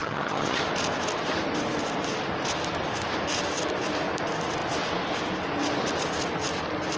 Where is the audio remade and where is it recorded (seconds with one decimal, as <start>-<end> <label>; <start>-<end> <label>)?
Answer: 0.0-0.6 remade; 0.6-7.0 recorded